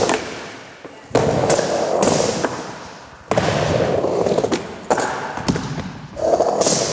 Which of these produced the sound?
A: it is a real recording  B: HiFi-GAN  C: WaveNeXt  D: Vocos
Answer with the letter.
A